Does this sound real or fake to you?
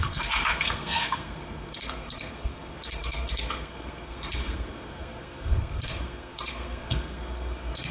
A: fake